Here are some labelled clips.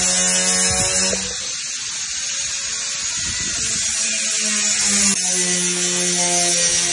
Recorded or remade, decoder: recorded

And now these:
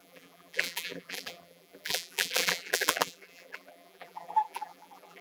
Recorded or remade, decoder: remade, vocoder, BigVGAN v2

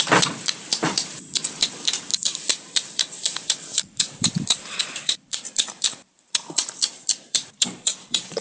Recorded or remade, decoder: remade, vocoder, BigVGAN v2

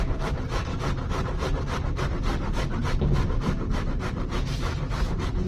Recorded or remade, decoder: remade, vocoder, BigVGAN v2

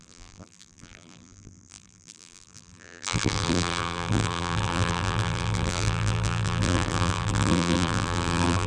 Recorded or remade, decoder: remade, vocoder, BigVGAN v2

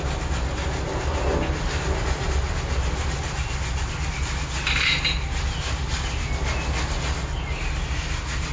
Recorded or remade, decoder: recorded